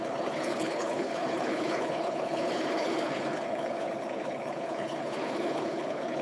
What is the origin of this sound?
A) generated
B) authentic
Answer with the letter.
A